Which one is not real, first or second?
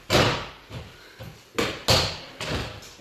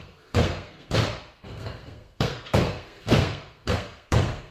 second